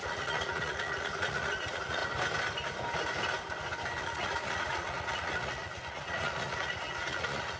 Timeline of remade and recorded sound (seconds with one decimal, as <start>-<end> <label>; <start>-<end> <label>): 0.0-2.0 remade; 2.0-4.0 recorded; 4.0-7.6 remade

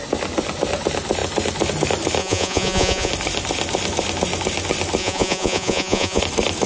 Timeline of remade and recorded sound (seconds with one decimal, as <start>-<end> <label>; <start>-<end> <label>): 0.0-2.2 recorded; 2.2-3.1 remade; 3.1-5.0 recorded; 5.0-6.2 remade; 6.2-6.7 recorded

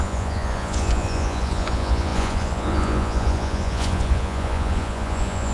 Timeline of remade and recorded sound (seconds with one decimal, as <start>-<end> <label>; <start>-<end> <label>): 0.0-5.5 remade